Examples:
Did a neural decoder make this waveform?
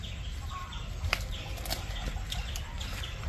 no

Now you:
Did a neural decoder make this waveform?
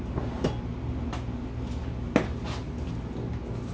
no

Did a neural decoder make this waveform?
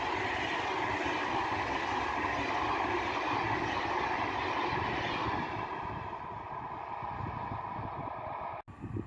no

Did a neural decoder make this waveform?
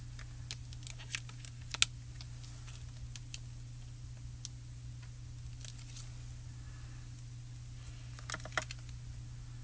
no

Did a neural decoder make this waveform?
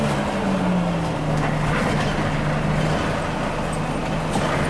no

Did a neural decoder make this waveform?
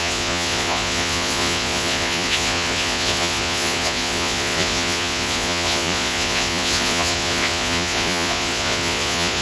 yes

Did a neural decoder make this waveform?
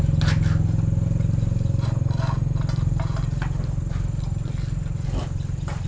no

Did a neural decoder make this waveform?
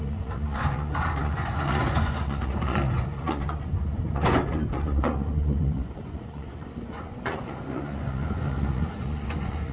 yes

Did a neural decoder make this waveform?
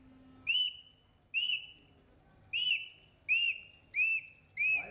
no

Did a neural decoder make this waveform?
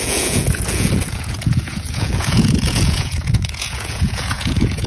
yes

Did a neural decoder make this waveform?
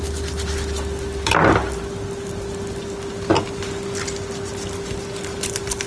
no